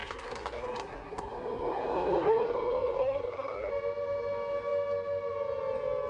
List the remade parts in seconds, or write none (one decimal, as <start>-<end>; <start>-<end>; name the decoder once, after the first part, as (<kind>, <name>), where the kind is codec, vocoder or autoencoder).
0.0-3.7 (codec, SNAC)